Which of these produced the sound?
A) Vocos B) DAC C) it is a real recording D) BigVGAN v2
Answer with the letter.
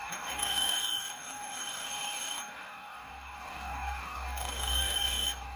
B